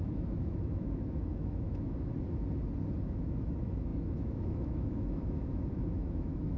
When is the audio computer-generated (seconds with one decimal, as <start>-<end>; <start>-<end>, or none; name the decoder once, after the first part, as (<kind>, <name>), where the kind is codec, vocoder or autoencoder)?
0.0-2.1 (autoencoder, DAC-VAE); 3.0-6.6